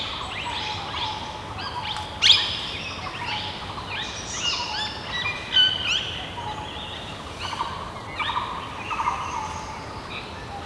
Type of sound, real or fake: real